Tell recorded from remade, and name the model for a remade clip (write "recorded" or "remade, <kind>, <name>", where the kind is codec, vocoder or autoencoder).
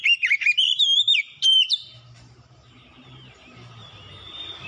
remade, vocoder, BigVGAN v2